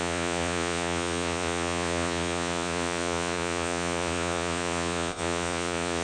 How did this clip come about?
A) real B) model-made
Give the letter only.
B